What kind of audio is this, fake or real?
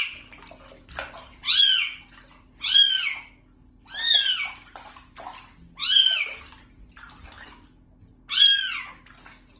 real